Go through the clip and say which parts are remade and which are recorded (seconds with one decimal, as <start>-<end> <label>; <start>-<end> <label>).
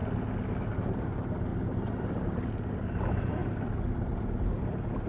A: 0.0-5.1 recorded